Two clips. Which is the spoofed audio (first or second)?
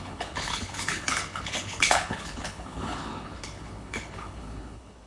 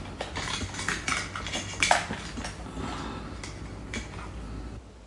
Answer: first